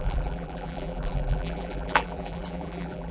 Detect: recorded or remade remade